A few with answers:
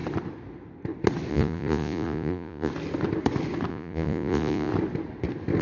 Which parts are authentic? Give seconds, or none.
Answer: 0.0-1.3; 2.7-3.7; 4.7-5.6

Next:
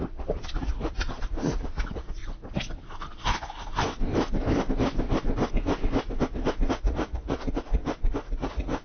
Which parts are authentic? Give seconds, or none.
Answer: 2.2-6.7; 7.8-8.4

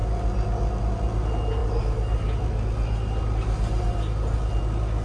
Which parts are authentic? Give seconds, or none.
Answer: 0.0-5.0

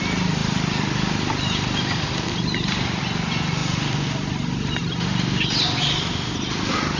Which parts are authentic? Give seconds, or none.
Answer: 0.0-0.4; 3.0-7.0

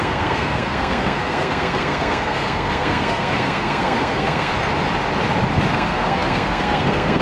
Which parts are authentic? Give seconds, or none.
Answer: 4.5-5.7

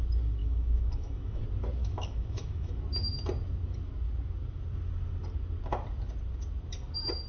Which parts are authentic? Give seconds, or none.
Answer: 0.0-0.4; 1.4-1.8; 2.8-7.3

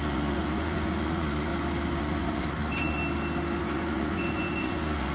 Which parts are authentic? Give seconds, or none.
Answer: 1.5-2.0; 3.0-3.6